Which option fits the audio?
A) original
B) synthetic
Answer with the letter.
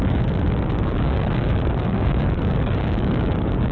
B